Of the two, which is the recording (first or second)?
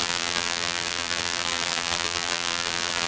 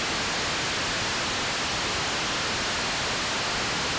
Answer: second